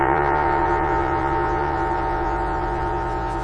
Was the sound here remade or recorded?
remade